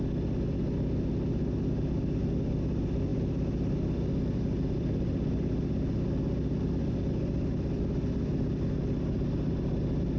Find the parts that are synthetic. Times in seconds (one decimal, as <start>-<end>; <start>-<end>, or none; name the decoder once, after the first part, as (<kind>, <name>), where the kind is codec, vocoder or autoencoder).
none